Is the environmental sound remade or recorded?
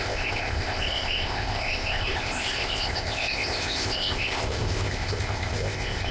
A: remade